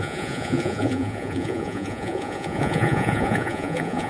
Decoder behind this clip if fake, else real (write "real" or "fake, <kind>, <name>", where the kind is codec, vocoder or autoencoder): fake, vocoder, Vocos